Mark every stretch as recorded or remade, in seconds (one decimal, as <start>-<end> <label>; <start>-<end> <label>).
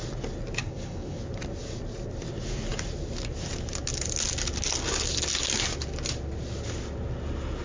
0.0-0.6 recorded; 0.6-1.2 remade; 1.2-7.6 recorded